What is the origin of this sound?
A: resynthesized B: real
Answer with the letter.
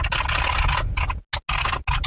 B